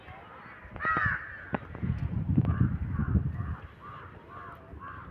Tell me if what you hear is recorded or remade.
recorded